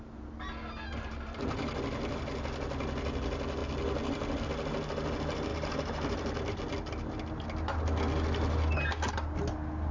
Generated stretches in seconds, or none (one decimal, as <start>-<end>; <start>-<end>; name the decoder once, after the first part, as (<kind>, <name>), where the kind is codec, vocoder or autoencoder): 0.9-1.8 (vocoder, BigVGAN v2); 5.5-6.6